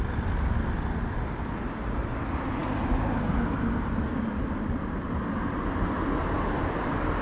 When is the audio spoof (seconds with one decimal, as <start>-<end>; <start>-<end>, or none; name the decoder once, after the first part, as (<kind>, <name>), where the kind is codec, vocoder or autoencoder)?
none